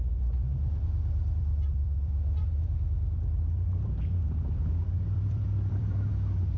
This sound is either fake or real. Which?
fake